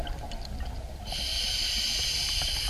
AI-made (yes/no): no